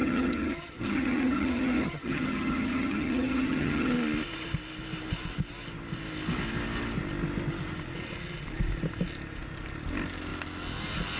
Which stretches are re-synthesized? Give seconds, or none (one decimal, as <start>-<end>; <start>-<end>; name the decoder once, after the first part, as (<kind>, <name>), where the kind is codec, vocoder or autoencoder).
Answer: 0.0-3.9 (vocoder, HiFi-GAN)